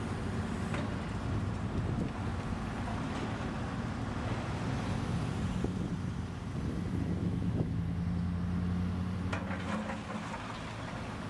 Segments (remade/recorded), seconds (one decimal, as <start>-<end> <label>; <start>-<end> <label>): 0.0-7.2 recorded; 7.2-7.8 remade; 7.8-11.3 recorded